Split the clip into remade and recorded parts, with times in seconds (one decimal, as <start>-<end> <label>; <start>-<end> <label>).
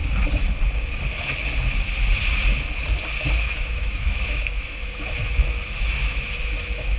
0.0-3.3 recorded; 3.3-7.0 remade